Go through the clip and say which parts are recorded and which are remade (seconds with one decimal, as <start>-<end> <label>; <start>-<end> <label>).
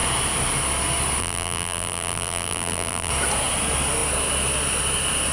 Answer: 0.0-1.2 recorded; 1.2-3.1 remade; 3.1-5.3 recorded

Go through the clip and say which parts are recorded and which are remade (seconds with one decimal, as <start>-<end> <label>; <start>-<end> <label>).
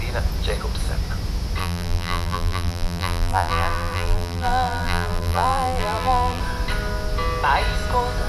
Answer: 0.0-1.6 recorded; 1.6-6.4 remade; 6.4-8.3 recorded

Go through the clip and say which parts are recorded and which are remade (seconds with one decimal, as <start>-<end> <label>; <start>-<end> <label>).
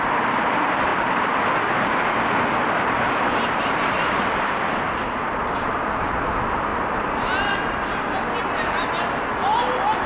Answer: 0.0-0.9 remade; 0.9-3.8 recorded; 3.8-6.7 remade; 6.7-7.6 recorded; 7.6-10.1 remade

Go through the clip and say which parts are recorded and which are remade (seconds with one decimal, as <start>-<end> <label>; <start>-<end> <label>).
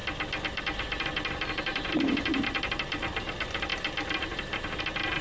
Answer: 0.0-1.7 recorded; 1.7-3.3 remade; 3.3-3.7 recorded; 3.7-4.8 remade; 4.8-5.2 recorded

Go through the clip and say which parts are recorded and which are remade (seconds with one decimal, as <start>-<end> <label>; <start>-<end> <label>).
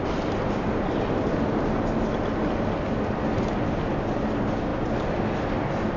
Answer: 0.0-6.0 recorded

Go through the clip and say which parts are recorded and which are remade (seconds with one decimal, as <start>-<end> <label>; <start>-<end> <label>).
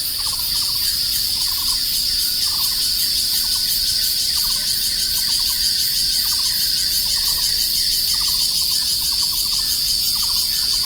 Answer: 0.0-1.9 recorded; 1.9-4.5 remade; 4.5-10.8 recorded